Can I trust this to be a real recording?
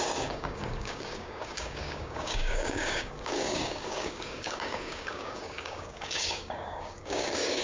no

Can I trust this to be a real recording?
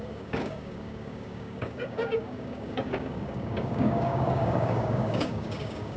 no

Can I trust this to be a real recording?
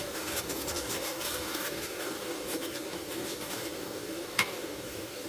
no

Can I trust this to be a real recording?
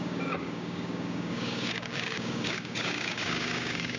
no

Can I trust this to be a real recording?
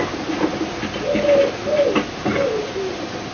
yes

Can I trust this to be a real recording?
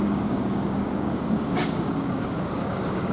no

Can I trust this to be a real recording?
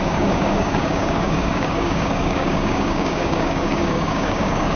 no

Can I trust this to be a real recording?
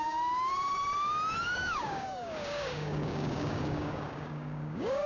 no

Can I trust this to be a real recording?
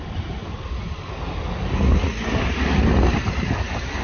yes